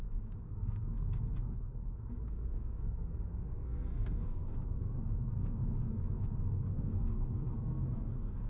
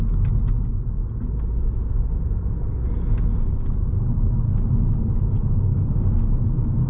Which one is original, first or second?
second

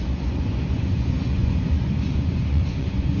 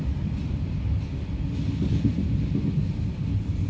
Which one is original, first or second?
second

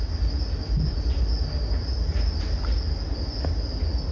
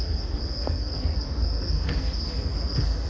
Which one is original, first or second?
first